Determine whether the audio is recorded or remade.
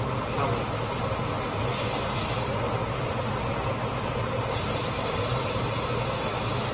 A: recorded